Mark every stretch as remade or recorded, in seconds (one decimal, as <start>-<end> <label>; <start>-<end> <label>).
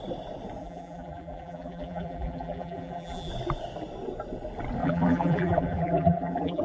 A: 0.0-0.6 recorded; 0.6-3.3 remade; 3.3-4.8 recorded; 4.8-6.6 remade